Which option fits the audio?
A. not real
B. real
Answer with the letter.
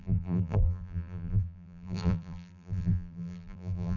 A